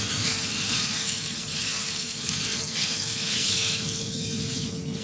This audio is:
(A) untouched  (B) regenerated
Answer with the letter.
B